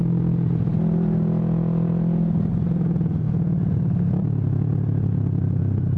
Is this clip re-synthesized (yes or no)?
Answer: no